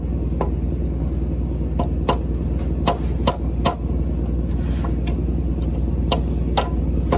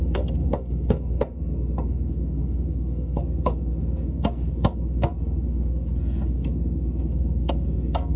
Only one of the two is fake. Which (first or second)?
second